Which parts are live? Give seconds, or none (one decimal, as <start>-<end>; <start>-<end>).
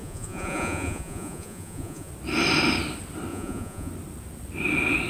2.1-3.3; 3.9-5.1